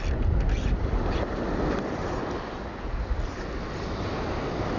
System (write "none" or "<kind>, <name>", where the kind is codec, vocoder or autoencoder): none